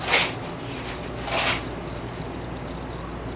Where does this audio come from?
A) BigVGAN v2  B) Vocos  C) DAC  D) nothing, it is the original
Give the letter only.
D